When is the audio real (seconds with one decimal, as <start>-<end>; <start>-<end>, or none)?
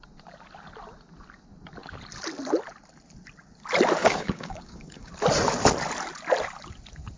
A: 0.0-4.0; 5.1-7.2